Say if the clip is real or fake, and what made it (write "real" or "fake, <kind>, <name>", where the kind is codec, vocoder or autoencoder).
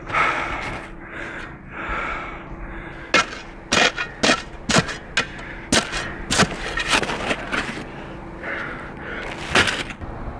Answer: real